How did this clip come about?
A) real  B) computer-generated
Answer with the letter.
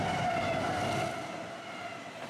A